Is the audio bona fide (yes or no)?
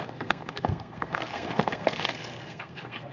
no